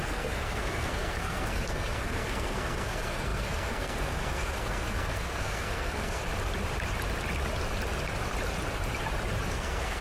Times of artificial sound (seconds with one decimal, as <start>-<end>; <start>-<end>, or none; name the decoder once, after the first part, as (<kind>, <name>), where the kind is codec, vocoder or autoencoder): 0.0-6.2 (codec, SNAC); 9.5-10.0